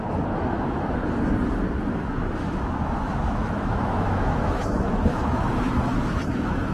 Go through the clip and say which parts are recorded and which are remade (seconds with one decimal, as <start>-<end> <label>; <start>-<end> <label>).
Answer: 0.0-1.0 remade; 1.0-1.9 recorded; 1.9-6.7 remade